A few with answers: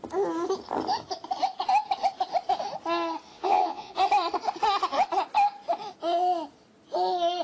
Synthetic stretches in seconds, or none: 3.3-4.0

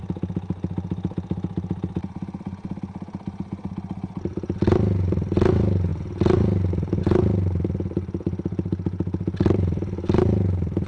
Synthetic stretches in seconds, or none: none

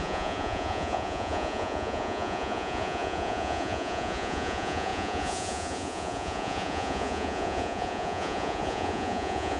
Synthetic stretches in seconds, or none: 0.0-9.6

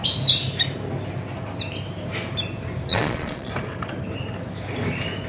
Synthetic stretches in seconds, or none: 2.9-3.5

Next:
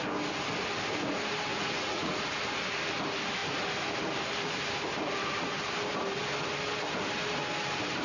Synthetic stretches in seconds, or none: 1.5-2.4

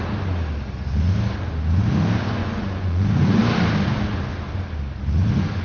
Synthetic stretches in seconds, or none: 2.4-3.4